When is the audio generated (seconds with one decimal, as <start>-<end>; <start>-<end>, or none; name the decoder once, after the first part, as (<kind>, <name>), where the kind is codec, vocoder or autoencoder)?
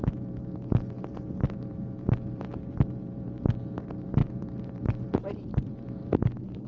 4.2-6.7 (vocoder, BigVGAN v2)